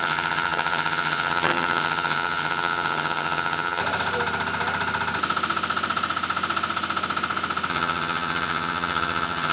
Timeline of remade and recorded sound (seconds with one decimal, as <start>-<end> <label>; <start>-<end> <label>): 0.0-3.8 remade; 3.8-7.7 recorded; 7.7-9.5 remade